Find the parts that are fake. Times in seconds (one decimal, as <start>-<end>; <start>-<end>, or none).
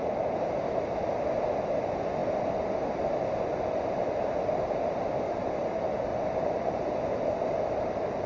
6.1-6.8